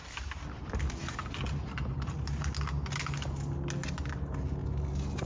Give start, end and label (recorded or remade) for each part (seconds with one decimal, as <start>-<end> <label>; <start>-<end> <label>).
0.0-5.3 recorded